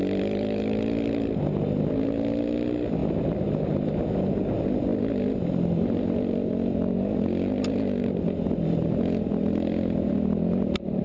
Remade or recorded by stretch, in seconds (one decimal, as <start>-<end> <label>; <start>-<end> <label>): 0.0-3.0 recorded; 3.0-4.3 remade; 4.3-11.0 recorded